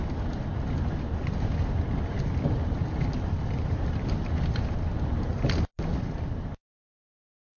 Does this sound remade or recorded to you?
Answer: recorded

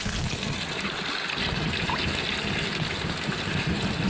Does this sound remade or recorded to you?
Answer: recorded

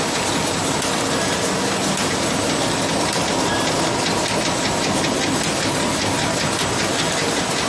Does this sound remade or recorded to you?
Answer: recorded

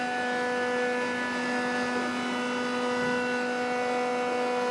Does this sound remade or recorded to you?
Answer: recorded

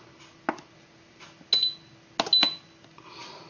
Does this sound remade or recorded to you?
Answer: recorded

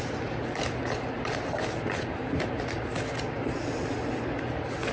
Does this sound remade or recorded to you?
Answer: recorded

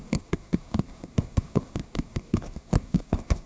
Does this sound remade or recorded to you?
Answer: remade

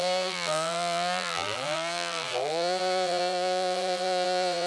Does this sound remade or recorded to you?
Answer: remade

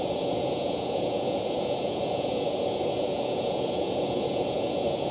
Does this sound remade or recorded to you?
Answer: remade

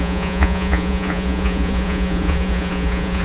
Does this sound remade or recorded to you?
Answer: remade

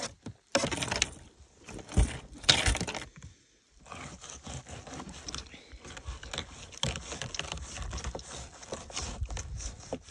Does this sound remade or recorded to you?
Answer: recorded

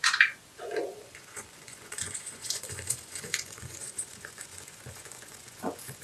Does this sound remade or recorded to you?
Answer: remade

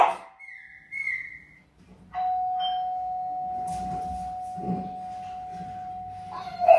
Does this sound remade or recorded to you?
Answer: recorded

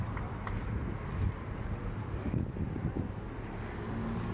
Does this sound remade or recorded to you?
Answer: recorded